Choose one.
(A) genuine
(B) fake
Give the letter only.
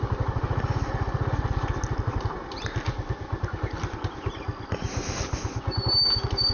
A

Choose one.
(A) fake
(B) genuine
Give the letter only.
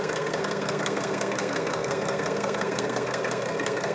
A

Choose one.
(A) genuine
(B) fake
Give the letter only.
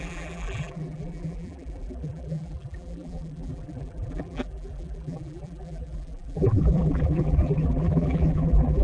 B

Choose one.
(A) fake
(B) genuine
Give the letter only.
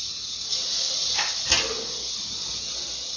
B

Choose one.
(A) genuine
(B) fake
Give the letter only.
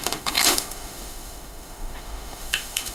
B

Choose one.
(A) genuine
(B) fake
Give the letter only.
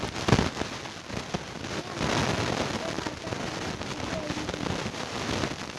A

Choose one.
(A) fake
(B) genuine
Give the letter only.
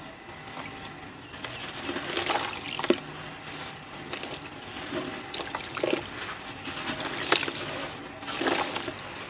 B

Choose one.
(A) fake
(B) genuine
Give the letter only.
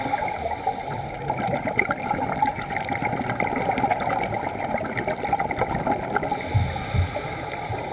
B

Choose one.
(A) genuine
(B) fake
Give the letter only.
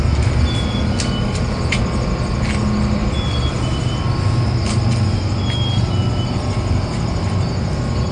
A